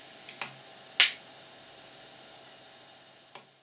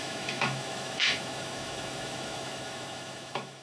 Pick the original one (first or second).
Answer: first